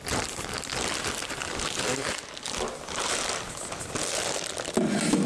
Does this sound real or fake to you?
real